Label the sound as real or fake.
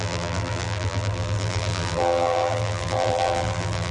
fake